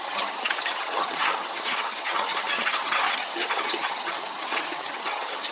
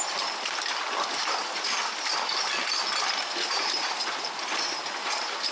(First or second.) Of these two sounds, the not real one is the first